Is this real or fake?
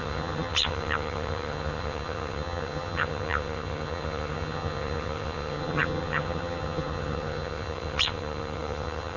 fake